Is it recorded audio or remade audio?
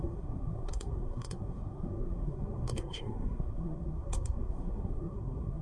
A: remade